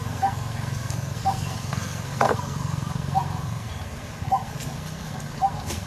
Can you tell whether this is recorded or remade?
remade